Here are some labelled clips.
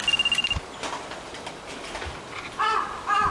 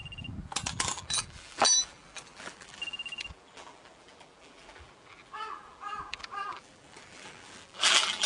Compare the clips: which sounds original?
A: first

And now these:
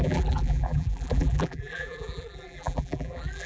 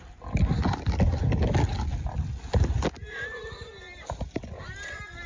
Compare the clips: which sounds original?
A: second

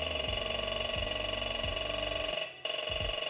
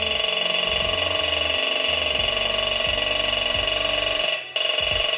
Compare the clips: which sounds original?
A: second